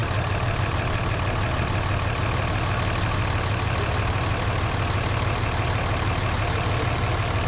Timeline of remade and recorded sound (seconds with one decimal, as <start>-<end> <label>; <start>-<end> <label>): 0.0-7.5 recorded